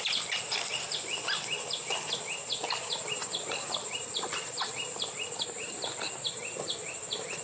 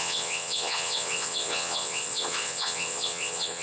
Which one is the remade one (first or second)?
second